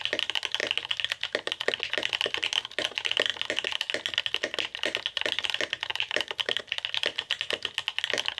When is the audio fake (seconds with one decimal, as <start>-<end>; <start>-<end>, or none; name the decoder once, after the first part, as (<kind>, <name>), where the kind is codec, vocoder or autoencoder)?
5.9-6.6 (vocoder, BigVGAN v2)